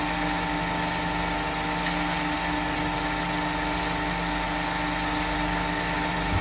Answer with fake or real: real